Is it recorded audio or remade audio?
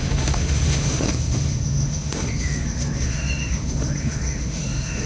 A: remade